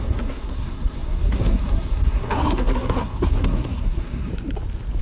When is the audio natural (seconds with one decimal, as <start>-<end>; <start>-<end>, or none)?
4.3-5.0